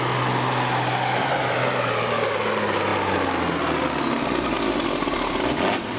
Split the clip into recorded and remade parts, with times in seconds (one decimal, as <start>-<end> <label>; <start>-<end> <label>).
0.0-6.0 recorded